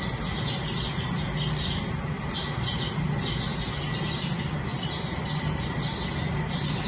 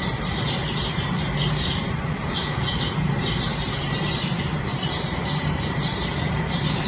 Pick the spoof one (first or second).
second